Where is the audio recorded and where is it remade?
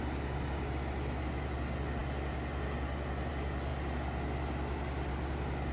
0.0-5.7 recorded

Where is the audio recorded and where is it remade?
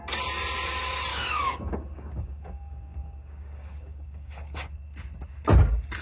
0.0-1.1 recorded; 1.1-4.7 remade; 4.7-6.0 recorded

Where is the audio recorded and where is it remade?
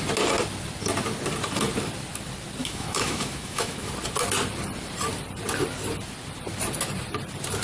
0.0-2.6 recorded; 2.6-3.9 remade; 3.9-7.6 recorded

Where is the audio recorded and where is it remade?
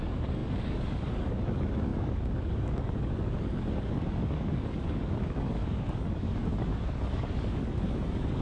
0.0-8.4 remade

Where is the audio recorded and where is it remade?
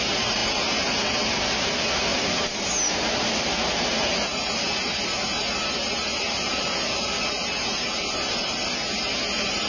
0.0-9.7 recorded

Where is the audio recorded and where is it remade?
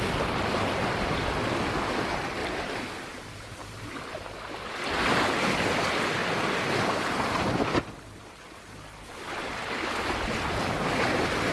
0.0-2.4 recorded; 2.4-4.9 remade; 4.9-11.5 recorded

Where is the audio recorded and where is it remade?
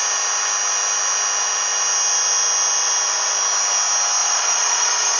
0.0-4.2 recorded; 4.2-5.2 remade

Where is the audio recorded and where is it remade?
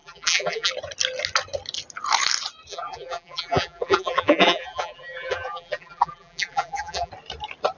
0.0-0.7 remade; 0.7-2.7 recorded; 2.7-7.1 remade; 7.1-7.8 recorded